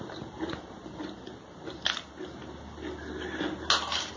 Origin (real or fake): real